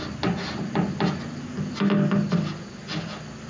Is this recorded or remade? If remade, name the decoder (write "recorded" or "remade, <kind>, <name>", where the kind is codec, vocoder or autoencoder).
recorded